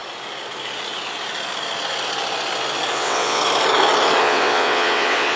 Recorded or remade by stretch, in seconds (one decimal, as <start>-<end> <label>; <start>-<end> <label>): 0.0-2.9 recorded; 2.9-3.4 remade; 3.4-4.2 recorded; 4.2-5.4 remade